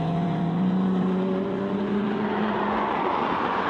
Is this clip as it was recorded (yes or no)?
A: no